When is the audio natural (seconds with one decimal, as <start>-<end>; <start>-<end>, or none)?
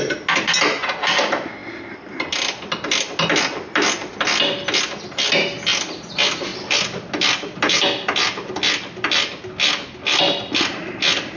0.0-11.4